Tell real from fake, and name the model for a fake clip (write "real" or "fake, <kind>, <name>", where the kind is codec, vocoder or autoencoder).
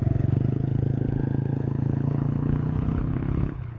fake, codec, HILCodec